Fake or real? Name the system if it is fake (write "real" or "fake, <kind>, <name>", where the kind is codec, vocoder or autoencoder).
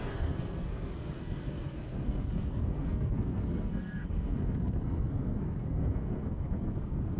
fake, codec, SNAC